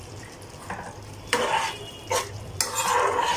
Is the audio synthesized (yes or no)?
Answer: no